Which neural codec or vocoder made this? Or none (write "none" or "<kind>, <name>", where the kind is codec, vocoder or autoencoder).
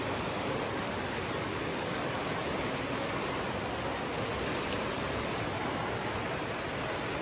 none